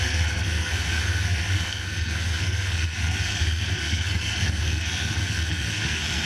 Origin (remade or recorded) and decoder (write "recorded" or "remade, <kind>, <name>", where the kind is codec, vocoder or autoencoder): remade, codec, SNAC